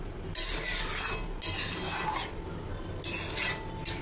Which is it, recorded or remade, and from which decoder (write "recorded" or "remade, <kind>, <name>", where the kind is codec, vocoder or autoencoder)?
recorded